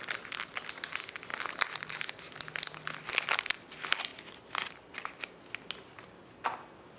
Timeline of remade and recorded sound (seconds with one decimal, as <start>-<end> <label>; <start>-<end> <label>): 0.0-7.0 recorded